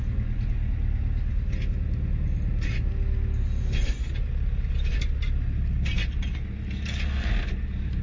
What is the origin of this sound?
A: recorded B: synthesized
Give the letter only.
A